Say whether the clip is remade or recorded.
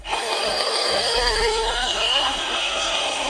remade